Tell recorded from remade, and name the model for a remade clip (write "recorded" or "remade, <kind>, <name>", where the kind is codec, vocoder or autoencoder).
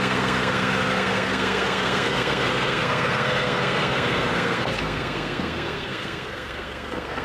remade, codec, SNAC